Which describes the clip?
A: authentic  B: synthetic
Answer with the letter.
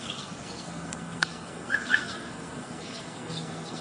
B